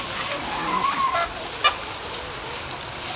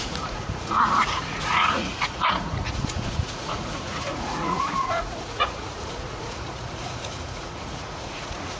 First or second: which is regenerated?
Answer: second